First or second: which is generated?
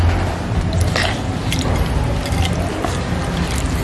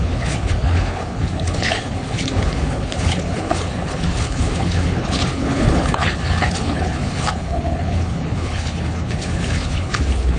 second